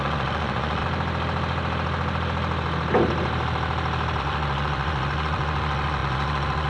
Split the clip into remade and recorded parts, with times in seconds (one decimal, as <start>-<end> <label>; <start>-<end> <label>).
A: 0.0-0.8 remade; 0.8-4.2 recorded; 4.2-6.7 remade